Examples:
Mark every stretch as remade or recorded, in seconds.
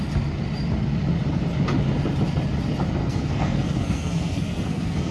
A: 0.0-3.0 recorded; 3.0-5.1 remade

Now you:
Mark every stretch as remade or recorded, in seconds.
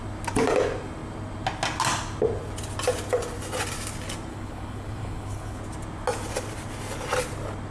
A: 0.0-4.3 recorded; 4.3-5.6 remade; 5.6-7.7 recorded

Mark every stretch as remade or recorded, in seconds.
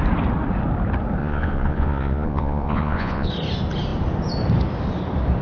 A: 0.0-1.2 recorded; 1.2-3.3 remade; 3.3-5.4 recorded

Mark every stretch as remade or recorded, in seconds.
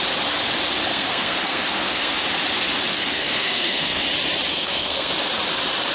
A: 0.0-0.9 recorded; 0.9-2.1 remade; 2.1-2.9 recorded; 2.9-4.1 remade; 4.1-4.5 recorded; 4.5-5.1 remade; 5.1-5.9 recorded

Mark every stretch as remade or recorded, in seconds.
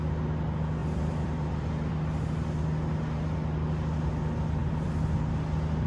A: 0.0-0.8 recorded; 0.8-1.9 remade; 1.9-5.9 recorded